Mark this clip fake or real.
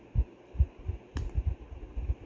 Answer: fake